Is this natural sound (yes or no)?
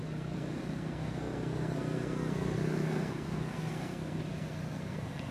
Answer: no